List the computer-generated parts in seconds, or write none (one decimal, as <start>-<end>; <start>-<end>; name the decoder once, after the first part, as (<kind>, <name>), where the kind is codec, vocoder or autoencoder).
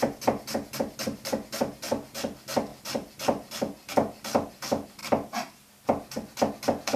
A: 2.7-3.5 (vocoder, BigVGAN v2)